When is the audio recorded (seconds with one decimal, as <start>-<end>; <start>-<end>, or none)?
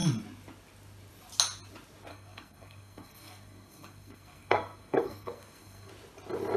0.0-2.1; 5.9-6.6